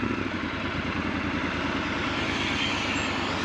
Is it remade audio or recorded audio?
recorded